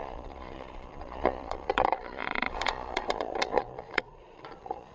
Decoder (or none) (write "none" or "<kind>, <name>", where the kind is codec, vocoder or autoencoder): vocoder, Vocos